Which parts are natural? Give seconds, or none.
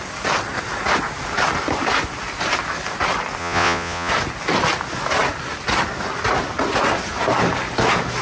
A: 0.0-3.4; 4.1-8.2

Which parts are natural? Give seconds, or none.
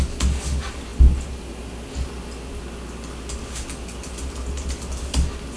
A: 0.0-5.6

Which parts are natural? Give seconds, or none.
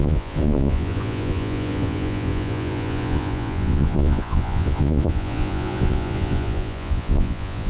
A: none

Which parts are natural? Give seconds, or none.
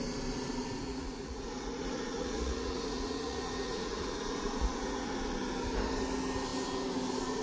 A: 0.0-0.8; 5.1-7.4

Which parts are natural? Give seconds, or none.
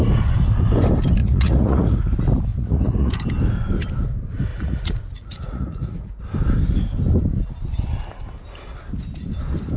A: 0.0-1.2; 2.1-2.5; 3.2-4.5; 6.2-9.8